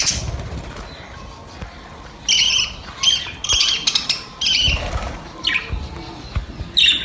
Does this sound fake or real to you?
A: real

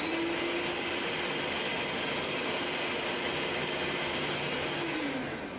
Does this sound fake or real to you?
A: real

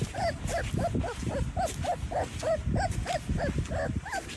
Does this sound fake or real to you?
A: real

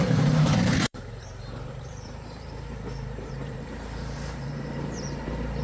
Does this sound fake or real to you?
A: fake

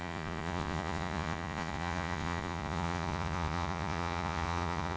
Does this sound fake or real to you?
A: fake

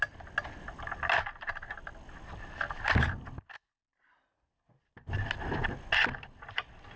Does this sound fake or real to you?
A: real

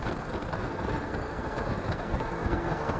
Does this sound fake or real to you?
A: fake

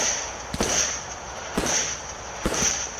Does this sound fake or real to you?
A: real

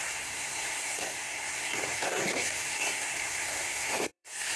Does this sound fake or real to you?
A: fake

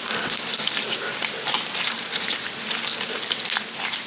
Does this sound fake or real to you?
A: real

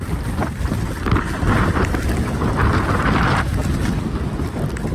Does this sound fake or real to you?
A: real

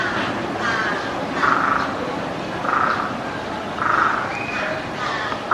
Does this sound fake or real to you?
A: real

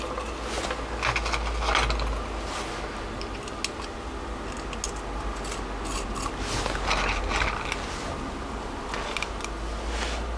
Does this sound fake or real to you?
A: real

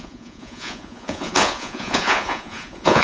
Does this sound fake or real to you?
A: fake